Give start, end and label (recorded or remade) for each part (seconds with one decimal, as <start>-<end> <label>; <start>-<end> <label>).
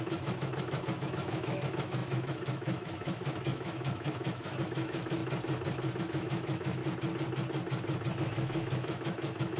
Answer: 0.0-5.2 remade; 5.2-6.0 recorded; 6.0-6.8 remade; 6.8-8.2 recorded; 8.2-9.6 remade